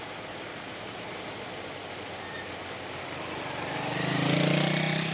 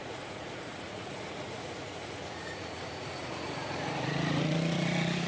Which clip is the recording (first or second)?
first